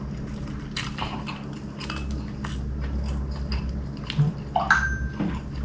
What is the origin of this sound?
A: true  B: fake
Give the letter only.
A